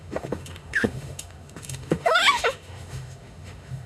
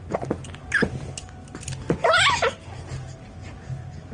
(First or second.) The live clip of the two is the second